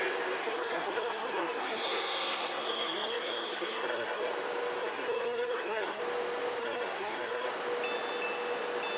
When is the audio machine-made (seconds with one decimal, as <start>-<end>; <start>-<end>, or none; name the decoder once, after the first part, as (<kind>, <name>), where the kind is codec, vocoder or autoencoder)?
0.4-4.3 (codec, SNAC); 4.8-6.0; 6.6-7.5